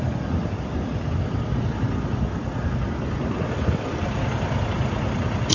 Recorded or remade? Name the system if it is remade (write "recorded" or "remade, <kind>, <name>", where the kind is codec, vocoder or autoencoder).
remade, vocoder, BigVGAN v2